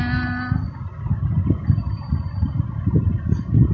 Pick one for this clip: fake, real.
real